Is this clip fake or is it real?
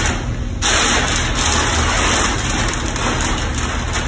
real